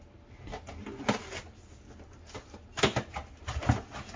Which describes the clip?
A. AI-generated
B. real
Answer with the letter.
B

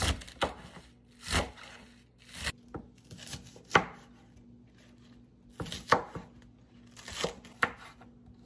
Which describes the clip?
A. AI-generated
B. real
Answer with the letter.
B